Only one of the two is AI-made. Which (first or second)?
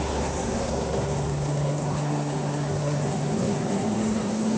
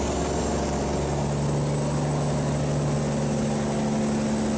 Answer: first